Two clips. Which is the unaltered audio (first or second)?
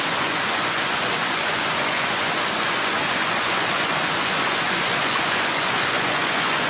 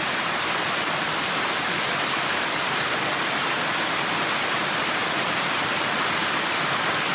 second